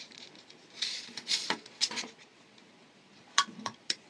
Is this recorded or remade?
remade